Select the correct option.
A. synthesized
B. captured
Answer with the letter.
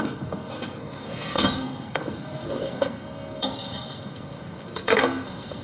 A